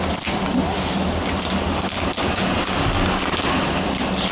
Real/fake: real